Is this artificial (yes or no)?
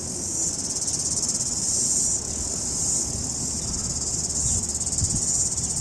no